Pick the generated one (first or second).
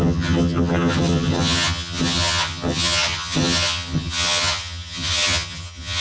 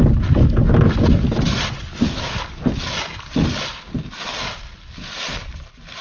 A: first